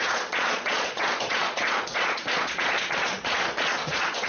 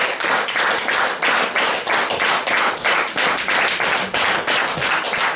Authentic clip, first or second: second